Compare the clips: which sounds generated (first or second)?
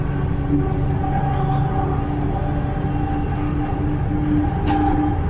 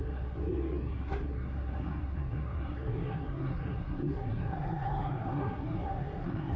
second